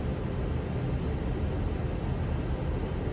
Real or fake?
real